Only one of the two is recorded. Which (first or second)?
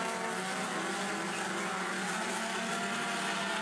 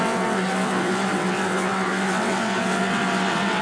first